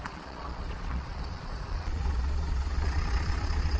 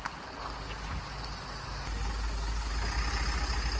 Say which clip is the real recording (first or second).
second